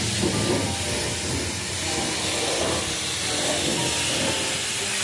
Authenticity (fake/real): real